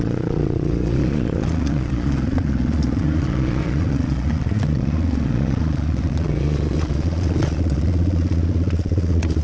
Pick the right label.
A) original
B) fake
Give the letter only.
B